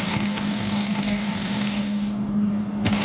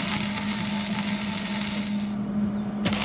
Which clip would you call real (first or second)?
second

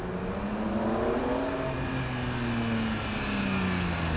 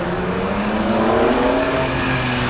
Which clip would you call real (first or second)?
first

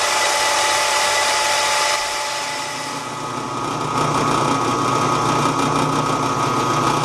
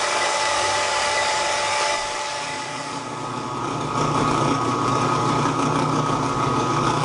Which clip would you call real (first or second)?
first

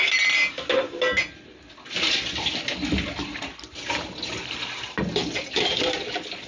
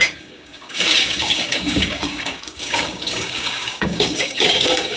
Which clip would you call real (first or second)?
first